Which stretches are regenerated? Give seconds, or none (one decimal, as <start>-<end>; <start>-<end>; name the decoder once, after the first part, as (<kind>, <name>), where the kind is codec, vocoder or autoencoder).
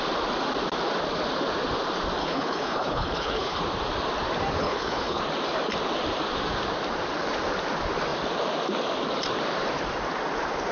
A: 2.2-3.6 (codec, HILCodec); 4.6-5.2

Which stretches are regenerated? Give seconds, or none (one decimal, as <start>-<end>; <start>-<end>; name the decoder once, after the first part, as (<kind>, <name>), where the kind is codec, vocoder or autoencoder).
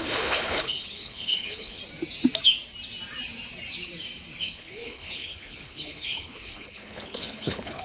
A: 0.0-1.8 (codec, HILCodec); 4.4-7.8